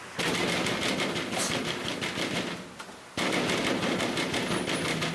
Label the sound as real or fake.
real